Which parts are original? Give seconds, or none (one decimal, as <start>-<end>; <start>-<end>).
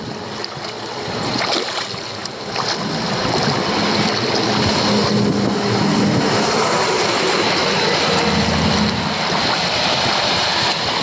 0.0-11.0